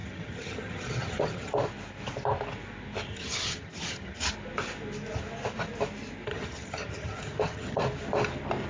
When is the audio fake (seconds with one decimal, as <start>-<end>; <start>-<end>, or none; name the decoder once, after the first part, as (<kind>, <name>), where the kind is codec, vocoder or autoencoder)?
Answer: 0.0-1.5 (vocoder, HiFi-GAN); 3.1-4.3; 6.3-7.8